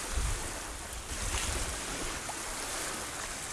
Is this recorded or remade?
recorded